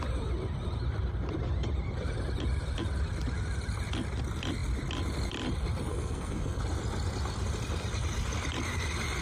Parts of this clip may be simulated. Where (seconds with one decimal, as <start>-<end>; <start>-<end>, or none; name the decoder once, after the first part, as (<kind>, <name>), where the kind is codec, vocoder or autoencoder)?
5.9-6.6 (codec, SNAC)